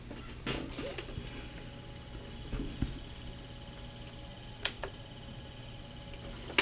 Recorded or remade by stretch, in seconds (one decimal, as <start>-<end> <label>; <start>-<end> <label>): 0.0-4.3 recorded; 4.3-5.8 remade; 5.8-6.6 recorded